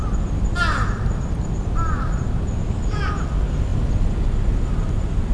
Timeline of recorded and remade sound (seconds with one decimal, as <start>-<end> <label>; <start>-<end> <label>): 0.0-5.3 recorded